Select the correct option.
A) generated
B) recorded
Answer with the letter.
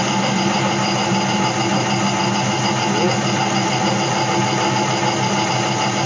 B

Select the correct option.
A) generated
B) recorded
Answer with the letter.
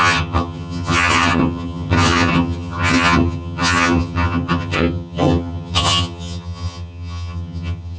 A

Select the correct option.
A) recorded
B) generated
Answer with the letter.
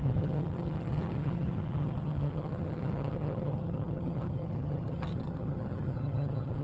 B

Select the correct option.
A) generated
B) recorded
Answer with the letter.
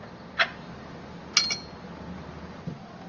B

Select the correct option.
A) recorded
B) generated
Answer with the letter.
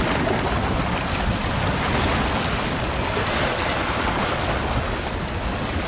A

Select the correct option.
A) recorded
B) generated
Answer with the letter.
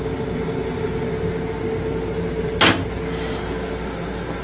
A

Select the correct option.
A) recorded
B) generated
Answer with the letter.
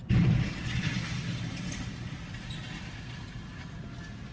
A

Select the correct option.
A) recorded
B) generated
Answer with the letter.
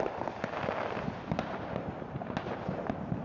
A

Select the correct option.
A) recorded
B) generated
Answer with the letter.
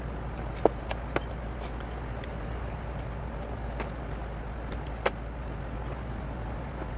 A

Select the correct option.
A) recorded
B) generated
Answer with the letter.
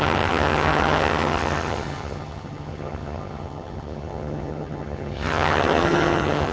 B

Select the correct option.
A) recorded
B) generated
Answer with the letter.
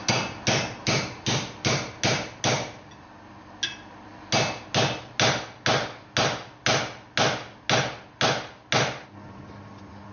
A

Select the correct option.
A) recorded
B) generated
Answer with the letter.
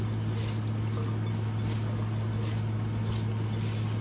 A